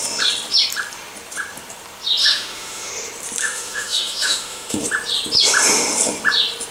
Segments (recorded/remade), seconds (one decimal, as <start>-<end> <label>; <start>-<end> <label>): 0.0-2.2 recorded; 2.2-2.9 remade; 2.9-3.4 recorded; 3.4-4.8 remade; 4.8-6.7 recorded